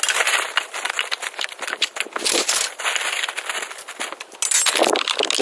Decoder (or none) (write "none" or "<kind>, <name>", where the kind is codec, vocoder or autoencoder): none